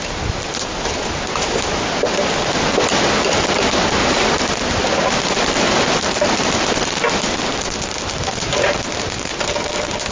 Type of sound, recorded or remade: recorded